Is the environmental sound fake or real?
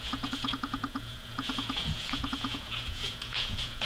fake